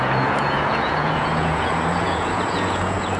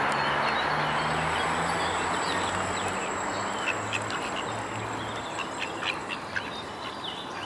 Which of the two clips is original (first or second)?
second